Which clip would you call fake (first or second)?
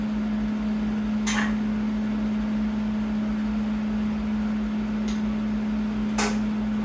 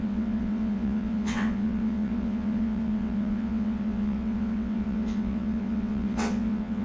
second